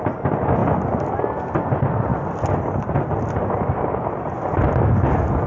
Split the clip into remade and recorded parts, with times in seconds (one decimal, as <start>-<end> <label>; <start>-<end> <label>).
0.0-5.5 recorded